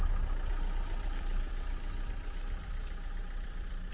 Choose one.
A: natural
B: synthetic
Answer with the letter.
B